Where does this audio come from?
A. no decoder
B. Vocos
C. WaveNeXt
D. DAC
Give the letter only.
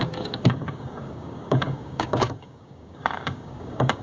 D